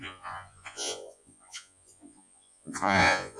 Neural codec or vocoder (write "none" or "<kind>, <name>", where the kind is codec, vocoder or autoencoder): vocoder, Vocos